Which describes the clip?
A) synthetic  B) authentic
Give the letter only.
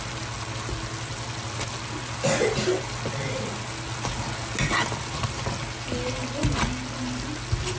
B